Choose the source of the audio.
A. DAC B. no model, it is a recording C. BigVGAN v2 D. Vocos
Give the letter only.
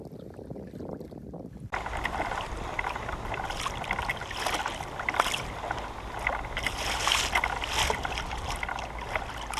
B